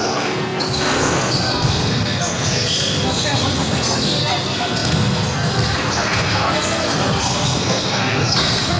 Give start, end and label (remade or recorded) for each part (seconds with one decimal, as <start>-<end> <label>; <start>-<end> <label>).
0.0-8.8 remade